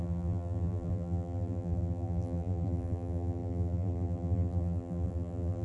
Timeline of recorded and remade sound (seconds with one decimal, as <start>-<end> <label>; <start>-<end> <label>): 0.0-5.6 remade